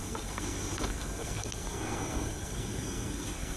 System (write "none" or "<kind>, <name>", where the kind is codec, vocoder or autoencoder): codec, SNAC